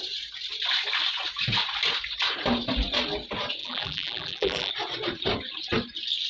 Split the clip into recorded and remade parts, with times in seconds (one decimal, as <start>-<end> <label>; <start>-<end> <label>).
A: 0.0-3.6 recorded; 3.6-4.7 remade; 4.7-6.3 recorded